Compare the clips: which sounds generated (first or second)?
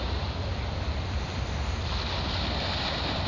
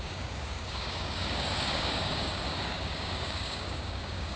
second